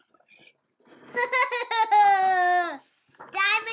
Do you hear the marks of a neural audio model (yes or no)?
no